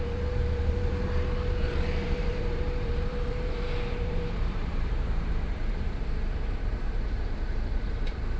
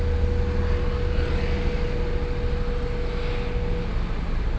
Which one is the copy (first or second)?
first